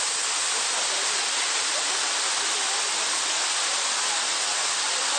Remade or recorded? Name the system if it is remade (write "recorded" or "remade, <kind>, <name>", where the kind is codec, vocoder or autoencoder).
recorded